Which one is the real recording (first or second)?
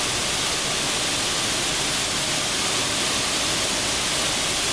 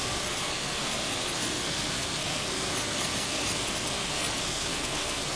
first